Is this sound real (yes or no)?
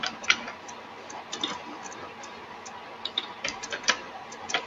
no